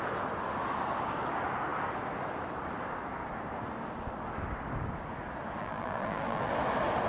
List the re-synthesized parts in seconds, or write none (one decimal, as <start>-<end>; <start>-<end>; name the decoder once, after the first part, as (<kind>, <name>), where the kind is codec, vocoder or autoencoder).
5.6-6.5 (vocoder, BigVGAN v2)